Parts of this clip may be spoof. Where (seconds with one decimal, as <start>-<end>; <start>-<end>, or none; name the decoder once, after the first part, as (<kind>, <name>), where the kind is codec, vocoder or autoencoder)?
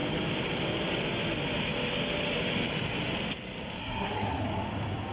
3.8-4.4 (codec, SNAC)